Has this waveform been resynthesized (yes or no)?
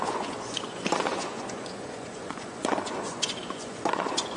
yes